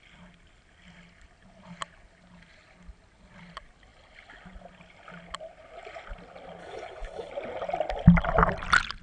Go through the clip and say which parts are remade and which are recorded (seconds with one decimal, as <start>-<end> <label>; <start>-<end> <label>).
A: 0.0-6.6 recorded; 6.6-7.3 remade; 7.3-9.0 recorded